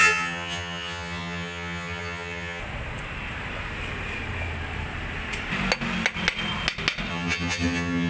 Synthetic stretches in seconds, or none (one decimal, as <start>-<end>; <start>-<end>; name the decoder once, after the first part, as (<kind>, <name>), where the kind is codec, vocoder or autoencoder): 0.0-2.6 (vocoder, HiFi-GAN); 7.1-8.1

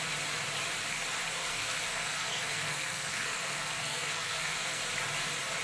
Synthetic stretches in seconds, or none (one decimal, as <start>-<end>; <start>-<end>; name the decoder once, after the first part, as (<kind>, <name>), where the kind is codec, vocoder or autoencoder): 1.4-4.8 (codec, SNAC)